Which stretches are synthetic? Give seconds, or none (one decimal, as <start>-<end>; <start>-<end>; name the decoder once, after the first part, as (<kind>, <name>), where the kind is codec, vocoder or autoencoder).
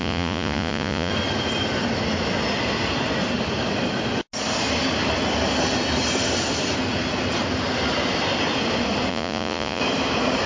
0.0-1.1 (vocoder, Vocos); 9.1-9.8